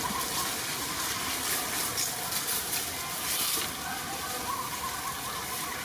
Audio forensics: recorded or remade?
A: recorded